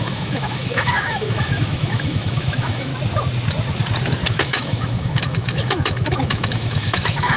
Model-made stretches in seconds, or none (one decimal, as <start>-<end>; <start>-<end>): 0.0-2.9; 4.3-7.4